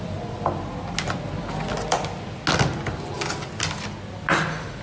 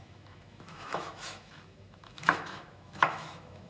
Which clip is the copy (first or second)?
second